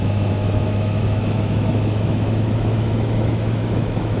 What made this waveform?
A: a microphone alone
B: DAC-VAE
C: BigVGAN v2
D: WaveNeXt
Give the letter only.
B